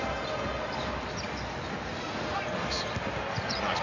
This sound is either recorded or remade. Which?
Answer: recorded